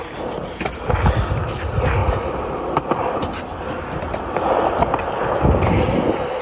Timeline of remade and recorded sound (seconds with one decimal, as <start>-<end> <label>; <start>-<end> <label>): 0.0-6.4 recorded